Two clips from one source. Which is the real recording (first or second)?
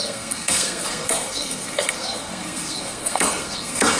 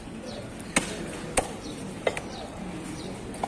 second